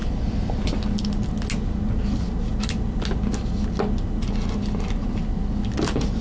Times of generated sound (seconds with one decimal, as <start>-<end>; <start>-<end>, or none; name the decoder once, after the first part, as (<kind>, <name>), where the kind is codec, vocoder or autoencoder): none